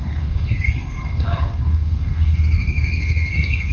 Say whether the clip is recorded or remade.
remade